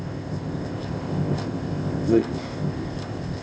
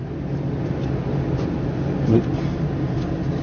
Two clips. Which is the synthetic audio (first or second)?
first